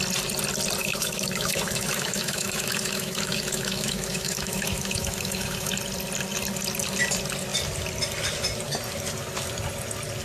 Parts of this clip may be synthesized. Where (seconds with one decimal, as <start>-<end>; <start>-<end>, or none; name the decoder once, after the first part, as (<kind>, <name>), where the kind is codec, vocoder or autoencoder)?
0.8-5.7 (autoencoder, DAC-VAE)